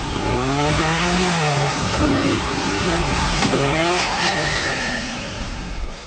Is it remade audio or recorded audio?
remade